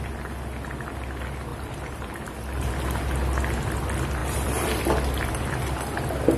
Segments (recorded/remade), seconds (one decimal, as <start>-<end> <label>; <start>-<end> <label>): 0.0-1.5 recorded; 1.5-2.7 remade; 2.7-4.2 recorded; 4.2-4.8 remade; 4.8-6.4 recorded